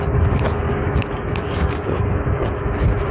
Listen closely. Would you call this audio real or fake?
fake